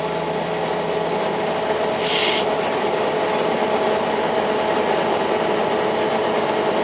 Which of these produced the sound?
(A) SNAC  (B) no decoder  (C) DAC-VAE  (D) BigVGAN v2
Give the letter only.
B